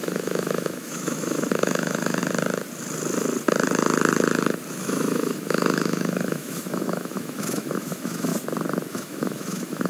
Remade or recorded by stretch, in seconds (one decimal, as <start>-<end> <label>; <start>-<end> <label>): 0.0-2.2 remade; 2.2-4.7 recorded; 4.7-8.3 remade; 8.3-8.9 recorded; 8.9-9.9 remade